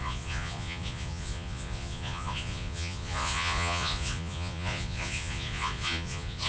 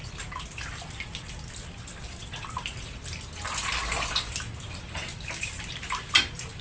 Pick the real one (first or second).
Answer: second